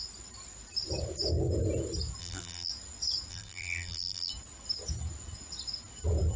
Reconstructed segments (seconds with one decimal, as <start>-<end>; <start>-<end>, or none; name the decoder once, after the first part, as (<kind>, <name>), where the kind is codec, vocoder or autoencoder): 2.2-2.7 (vocoder, BigVGAN v2); 3.3-4.3